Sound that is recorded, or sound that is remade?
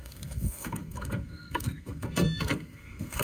remade